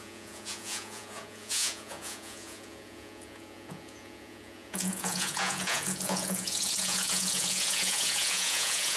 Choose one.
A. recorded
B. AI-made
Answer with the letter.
B